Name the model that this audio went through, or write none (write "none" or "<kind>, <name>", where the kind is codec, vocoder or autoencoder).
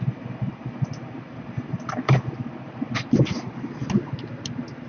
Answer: none